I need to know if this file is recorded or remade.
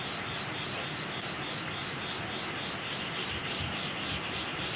recorded